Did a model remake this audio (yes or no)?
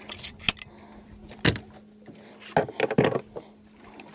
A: no